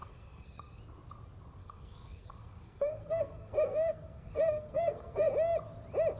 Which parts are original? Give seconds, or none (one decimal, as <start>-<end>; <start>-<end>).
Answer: 0.8-1.6; 5.3-6.2

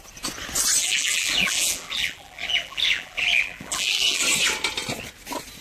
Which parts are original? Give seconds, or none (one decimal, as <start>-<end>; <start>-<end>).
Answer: 0.0-0.8; 4.2-5.6

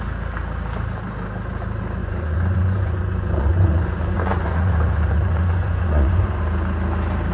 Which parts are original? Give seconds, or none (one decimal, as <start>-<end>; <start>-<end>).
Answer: 0.0-2.0; 6.4-7.3

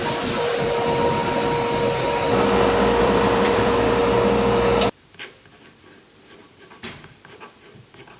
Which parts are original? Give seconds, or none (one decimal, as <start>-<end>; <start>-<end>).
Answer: 1.2-3.0; 4.0-4.9